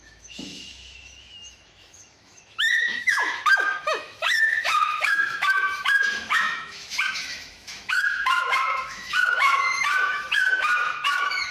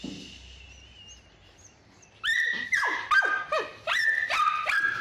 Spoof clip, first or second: first